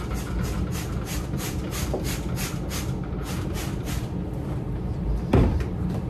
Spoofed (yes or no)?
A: yes